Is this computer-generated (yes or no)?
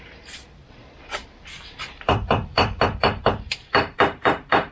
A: yes